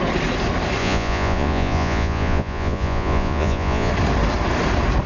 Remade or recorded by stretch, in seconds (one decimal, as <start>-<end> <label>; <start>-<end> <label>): 0.0-0.8 recorded; 0.8-3.9 remade; 3.9-5.1 recorded